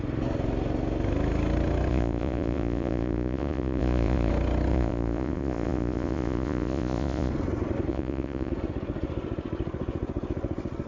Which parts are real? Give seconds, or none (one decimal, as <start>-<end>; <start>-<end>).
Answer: 0.0-1.9; 4.3-4.7; 7.3-7.9; 8.5-10.9